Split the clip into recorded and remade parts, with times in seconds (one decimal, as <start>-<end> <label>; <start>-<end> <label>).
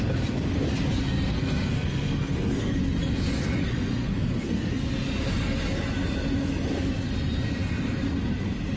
0.0-1.3 recorded; 1.3-2.8 remade; 2.8-3.6 recorded; 3.6-4.7 remade; 4.7-8.8 recorded